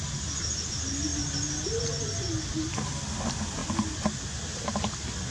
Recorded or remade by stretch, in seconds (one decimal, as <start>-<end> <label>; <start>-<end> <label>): 0.0-5.3 recorded